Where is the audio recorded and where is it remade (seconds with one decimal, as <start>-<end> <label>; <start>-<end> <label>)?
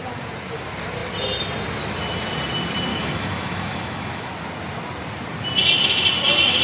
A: 0.0-2.9 recorded; 2.9-4.3 remade; 4.3-6.6 recorded